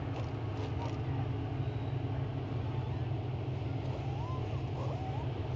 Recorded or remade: recorded